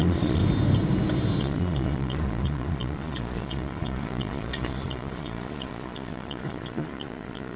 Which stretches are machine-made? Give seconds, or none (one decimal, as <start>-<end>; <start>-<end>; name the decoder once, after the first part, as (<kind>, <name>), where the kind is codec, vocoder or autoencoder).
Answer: 0.0-0.4 (vocoder, Vocos); 1.4-7.6